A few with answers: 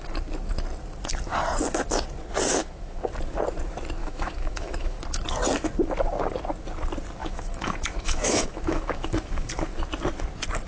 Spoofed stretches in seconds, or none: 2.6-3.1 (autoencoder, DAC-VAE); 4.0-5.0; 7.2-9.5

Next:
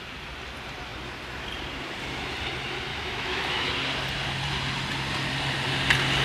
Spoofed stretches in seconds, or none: 2.9-3.7 (autoencoder, DAC-VAE)

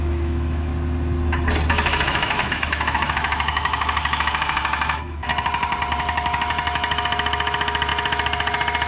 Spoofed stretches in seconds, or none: 0.0-0.7 (autoencoder, DAC-VAE); 1.7-5.3; 6.0-8.9

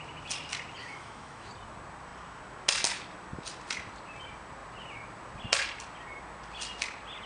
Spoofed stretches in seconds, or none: 0.8-1.5 (autoencoder, DAC-VAE)